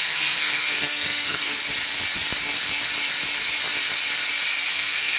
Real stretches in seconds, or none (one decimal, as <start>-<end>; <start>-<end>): 1.6-4.7